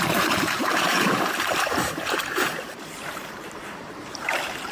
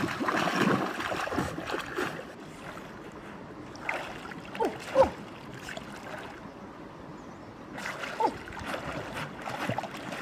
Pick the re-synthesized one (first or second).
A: first